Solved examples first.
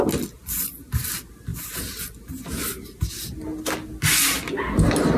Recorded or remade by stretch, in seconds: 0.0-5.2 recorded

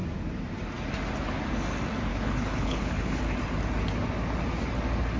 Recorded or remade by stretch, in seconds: 0.0-2.1 recorded; 2.1-3.2 remade; 3.2-5.2 recorded

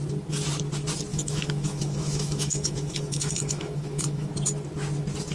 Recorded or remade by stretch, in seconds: 0.0-1.1 recorded; 1.1-4.3 remade; 4.3-5.3 recorded

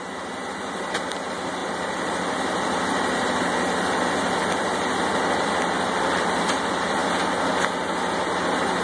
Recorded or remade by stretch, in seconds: 0.0-8.8 recorded

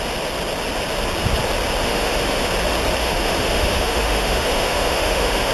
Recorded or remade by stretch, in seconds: 0.0-1.8 recorded; 1.8-2.5 remade; 2.5-3.0 recorded; 3.0-5.5 remade

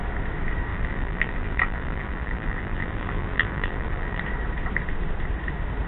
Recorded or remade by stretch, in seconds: 0.0-0.7 recorded; 0.7-4.2 remade; 4.2-5.9 recorded